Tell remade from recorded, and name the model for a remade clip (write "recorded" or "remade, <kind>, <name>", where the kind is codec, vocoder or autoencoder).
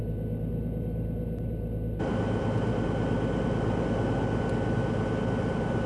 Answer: recorded